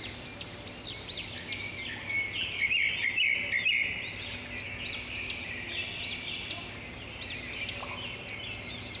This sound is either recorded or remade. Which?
recorded